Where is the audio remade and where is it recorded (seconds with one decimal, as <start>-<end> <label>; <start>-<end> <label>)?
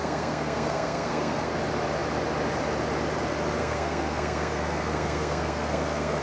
0.0-1.6 remade; 1.6-3.6 recorded; 3.6-6.2 remade